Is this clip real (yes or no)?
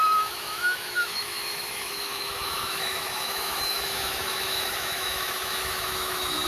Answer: no